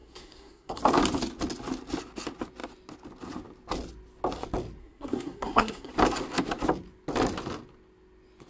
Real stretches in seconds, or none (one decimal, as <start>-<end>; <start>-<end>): 0.8-4.8; 5.9-8.5